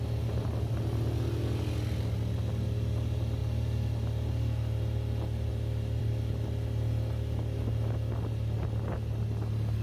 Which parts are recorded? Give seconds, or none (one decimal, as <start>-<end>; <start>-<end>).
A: 0.0-9.8